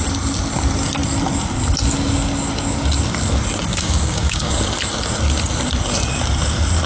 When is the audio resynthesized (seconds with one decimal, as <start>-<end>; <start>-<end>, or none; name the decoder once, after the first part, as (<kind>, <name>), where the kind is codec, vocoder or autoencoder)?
3.7-4.5 (codec, DAC)